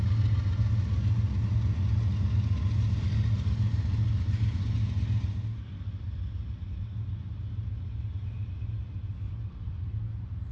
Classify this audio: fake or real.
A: real